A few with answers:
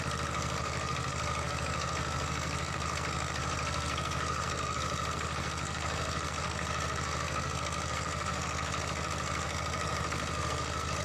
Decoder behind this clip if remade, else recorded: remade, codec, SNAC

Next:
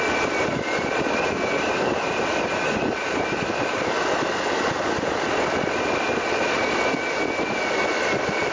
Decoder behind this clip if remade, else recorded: recorded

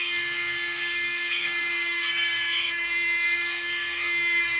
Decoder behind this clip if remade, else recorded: remade, codec, SNAC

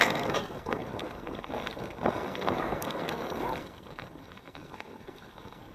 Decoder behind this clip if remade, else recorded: remade, codec, SNAC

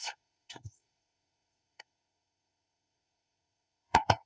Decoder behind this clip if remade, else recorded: remade, codec, SNAC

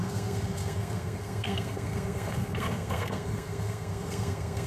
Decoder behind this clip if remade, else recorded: remade, codec, SNAC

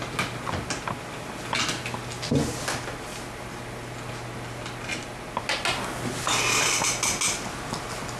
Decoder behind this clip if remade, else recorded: recorded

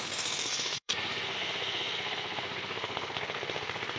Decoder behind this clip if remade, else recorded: remade, codec, SNAC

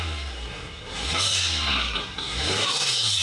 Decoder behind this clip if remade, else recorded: remade, codec, SNAC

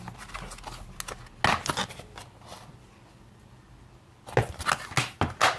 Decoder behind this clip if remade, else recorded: recorded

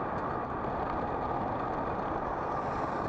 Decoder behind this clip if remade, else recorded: recorded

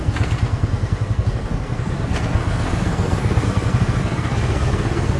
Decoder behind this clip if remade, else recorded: remade, codec, SNAC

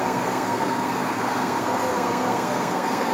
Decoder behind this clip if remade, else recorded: remade, codec, SNAC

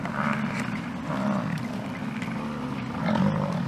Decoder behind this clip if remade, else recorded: recorded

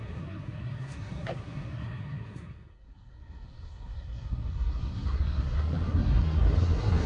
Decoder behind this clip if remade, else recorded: remade, codec, SNAC